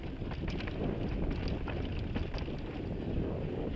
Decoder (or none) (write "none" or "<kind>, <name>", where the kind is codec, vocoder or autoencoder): none